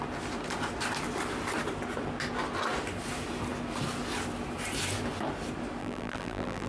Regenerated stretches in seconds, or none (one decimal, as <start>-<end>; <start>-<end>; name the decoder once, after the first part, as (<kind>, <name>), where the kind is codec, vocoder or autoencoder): 5.8-6.7 (vocoder, BigVGAN v2)

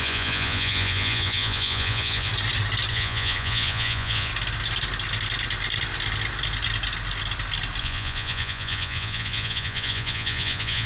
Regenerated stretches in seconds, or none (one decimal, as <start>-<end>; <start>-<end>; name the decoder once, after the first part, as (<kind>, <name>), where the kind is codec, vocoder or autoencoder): 0.0-2.3 (vocoder, Vocos); 2.9-4.3; 7.8-10.9

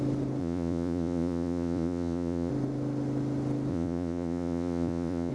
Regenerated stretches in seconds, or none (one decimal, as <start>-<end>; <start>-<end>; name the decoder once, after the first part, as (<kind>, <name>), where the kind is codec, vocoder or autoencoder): 0.4-2.5 (vocoder, Vocos); 3.7-5.3